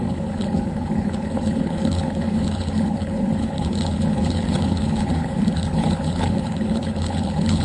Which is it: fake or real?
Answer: fake